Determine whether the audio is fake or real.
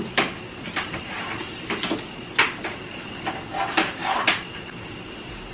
real